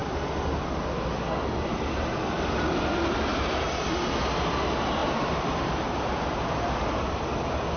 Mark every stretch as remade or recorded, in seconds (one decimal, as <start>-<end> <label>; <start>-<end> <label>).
0.0-3.3 recorded; 3.3-4.2 remade; 4.2-5.0 recorded; 5.0-7.2 remade; 7.2-7.8 recorded